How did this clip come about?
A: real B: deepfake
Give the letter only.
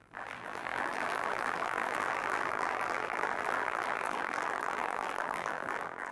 B